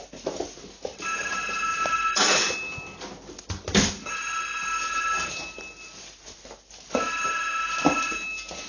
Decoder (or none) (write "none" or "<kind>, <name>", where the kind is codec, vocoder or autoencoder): none